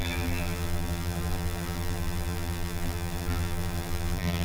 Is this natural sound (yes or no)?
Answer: no